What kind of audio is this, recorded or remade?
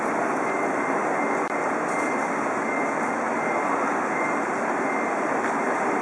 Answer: recorded